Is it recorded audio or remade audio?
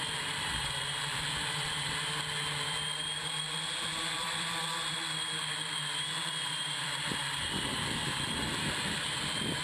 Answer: remade